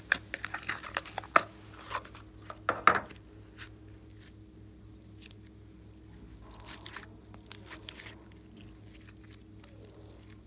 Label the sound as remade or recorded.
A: recorded